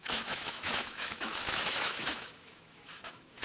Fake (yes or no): yes